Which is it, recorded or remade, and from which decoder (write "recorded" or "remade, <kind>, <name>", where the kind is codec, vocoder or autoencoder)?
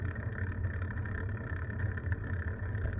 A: recorded